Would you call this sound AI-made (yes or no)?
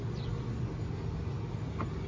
no